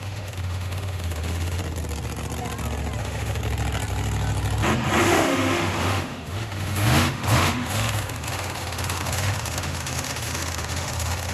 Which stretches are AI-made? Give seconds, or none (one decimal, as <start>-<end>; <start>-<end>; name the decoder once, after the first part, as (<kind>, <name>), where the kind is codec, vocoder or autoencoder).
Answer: 0.0-1.6 (autoencoder, DAC-VAE); 3.0-3.4; 5.0-11.3